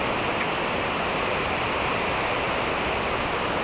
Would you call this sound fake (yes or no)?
no